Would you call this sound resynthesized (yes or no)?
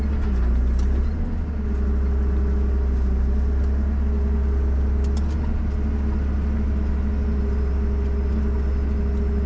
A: no